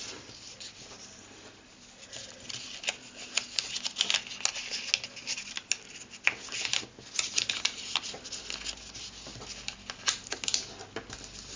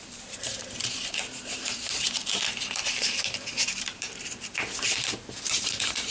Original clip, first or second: first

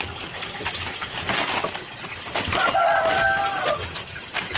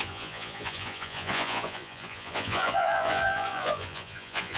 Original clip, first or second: first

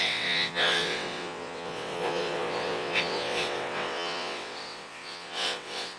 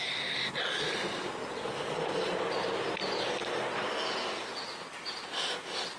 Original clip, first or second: second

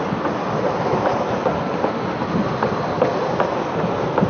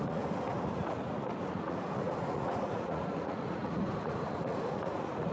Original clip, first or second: first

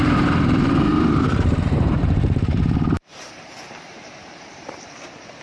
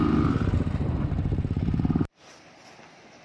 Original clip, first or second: second